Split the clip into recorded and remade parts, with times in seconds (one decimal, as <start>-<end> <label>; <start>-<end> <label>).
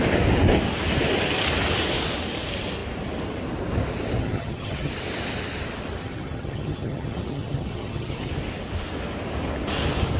0.0-4.2 recorded; 4.2-4.9 remade; 4.9-6.0 recorded; 6.0-8.3 remade; 8.3-10.2 recorded